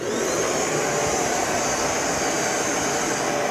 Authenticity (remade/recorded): recorded